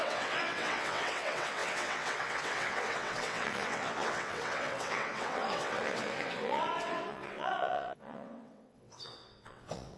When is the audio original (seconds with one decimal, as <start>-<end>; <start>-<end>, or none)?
none